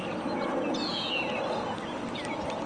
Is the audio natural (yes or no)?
yes